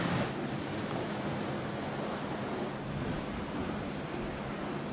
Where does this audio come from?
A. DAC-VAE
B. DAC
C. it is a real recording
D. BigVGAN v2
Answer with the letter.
C